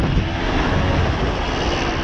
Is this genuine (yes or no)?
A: yes